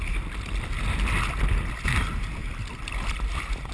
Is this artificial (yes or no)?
no